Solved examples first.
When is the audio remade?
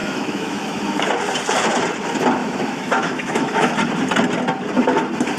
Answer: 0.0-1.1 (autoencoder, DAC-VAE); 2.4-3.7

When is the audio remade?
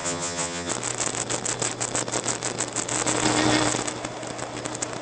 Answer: 0.0-0.7 (vocoder, HiFi-GAN)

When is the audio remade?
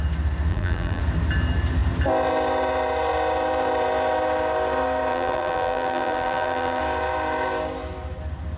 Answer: 0.5-1.0 (vocoder, BigVGAN v2); 5.1-6.8